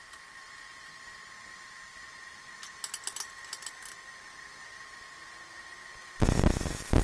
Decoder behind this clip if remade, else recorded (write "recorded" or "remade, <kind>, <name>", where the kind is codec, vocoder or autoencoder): recorded